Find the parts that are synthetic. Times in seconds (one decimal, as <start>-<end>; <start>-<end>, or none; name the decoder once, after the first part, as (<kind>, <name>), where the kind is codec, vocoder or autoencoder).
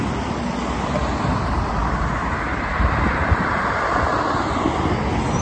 none